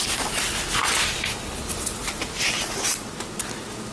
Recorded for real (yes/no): yes